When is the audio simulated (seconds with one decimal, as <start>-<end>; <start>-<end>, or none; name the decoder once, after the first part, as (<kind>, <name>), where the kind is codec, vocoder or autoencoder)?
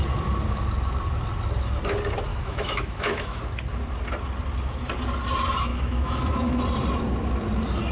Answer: 2.3-3.4 (autoencoder, DAC-VAE); 5.7-6.6